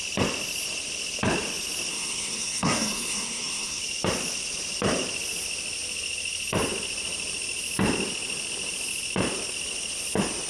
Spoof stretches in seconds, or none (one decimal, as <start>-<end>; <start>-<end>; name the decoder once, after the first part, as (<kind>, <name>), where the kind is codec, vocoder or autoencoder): 1.9-3.8 (codec, SNAC)